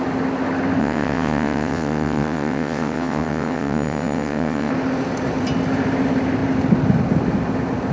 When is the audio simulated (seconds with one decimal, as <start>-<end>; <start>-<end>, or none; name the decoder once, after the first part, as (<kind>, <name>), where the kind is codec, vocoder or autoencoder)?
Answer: 0.8-4.7 (vocoder, WaveNeXt)